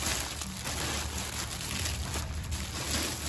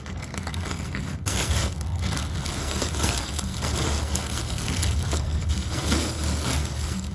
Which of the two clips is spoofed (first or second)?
second